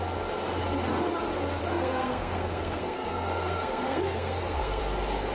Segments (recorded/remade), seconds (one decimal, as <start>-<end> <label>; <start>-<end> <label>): 0.0-1.6 recorded; 1.6-4.8 remade; 4.8-5.3 recorded